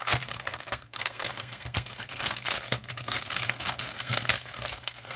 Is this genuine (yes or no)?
no